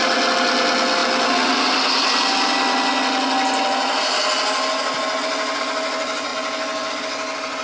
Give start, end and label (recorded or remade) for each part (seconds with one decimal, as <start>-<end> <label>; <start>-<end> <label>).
0.0-7.6 recorded

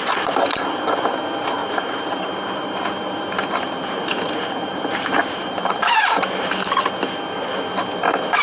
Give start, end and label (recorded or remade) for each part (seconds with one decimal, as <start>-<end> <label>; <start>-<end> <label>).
0.0-1.6 recorded; 1.6-6.6 remade; 6.6-8.4 recorded

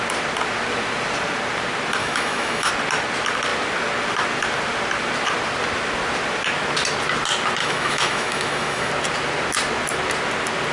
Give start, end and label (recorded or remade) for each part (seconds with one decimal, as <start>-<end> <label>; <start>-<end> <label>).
0.0-2.0 recorded; 2.0-2.7 remade; 2.7-7.6 recorded; 7.6-8.9 remade; 8.9-10.7 recorded

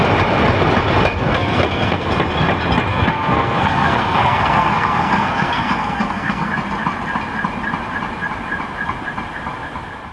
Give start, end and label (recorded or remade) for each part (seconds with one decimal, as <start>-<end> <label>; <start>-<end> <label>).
0.0-1.1 recorded; 1.1-2.1 remade; 2.1-2.9 recorded; 2.9-6.5 remade; 6.5-10.1 recorded

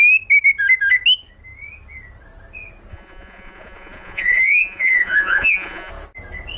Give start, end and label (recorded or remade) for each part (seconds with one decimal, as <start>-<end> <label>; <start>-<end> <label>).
0.0-2.9 recorded; 2.9-5.9 remade; 5.9-6.6 recorded

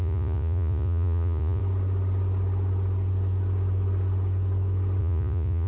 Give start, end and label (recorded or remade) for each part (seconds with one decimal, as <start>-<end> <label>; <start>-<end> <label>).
0.0-1.6 remade; 1.6-5.0 recorded; 5.0-5.7 remade

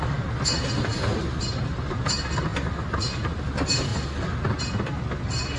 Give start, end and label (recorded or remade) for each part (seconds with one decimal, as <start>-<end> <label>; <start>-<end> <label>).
0.0-0.9 remade; 0.9-1.4 recorded; 1.4-3.9 remade; 3.9-4.6 recorded; 4.6-5.6 remade

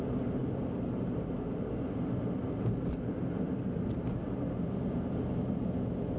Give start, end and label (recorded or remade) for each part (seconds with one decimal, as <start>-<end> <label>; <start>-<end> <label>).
0.0-6.2 recorded